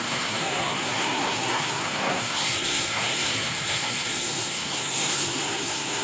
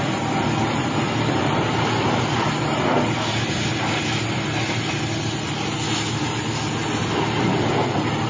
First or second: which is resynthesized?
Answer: first